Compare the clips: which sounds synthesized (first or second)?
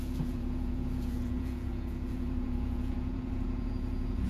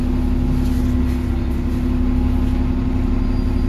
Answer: first